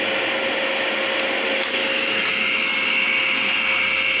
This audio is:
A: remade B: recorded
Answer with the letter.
B